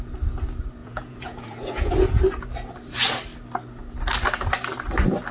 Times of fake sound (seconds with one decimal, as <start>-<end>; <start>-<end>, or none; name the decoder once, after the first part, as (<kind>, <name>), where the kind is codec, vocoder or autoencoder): 0.8-2.2 (vocoder, Vocos)